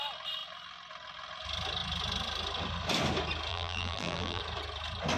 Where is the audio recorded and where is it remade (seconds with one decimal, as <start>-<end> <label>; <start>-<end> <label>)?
0.0-3.5 recorded; 3.5-4.4 remade; 4.4-5.2 recorded